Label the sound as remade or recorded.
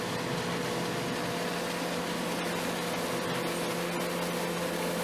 recorded